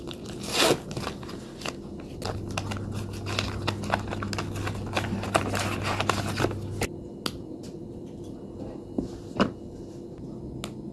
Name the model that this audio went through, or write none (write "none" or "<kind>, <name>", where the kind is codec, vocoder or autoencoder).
none